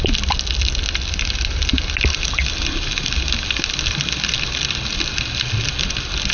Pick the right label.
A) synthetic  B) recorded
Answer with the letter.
B